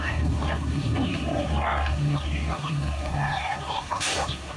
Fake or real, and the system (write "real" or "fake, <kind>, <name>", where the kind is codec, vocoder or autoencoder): fake, codec, SNAC